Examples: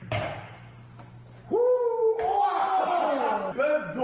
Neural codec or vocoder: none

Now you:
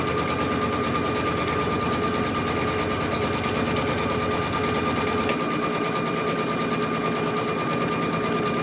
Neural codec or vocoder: none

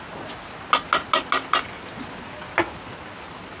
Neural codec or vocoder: none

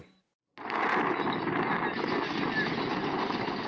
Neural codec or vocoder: none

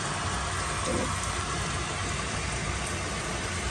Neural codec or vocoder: none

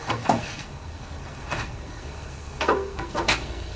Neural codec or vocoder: codec, SNAC